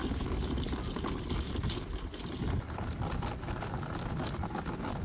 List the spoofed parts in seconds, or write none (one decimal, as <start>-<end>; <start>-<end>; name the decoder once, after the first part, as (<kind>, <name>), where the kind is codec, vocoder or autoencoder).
none